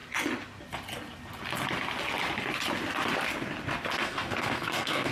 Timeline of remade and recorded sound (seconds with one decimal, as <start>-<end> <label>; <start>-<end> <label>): 0.0-4.0 recorded; 4.0-5.1 remade